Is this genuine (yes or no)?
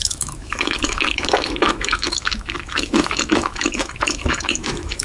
no